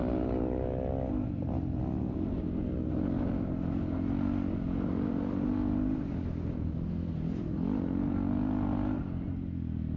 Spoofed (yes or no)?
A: no